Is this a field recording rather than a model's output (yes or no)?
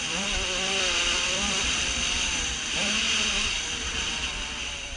no